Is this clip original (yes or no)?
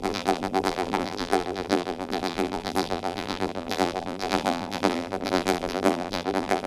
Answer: no